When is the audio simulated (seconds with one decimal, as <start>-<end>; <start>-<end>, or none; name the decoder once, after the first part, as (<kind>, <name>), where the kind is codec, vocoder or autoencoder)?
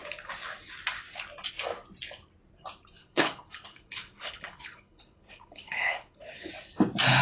3.0-6.5 (codec, HILCodec)